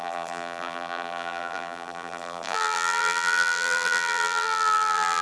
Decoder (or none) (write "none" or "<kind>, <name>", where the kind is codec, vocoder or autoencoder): vocoder, BigVGAN v2